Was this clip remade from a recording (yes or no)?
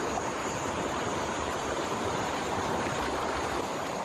yes